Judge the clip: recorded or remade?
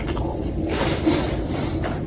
remade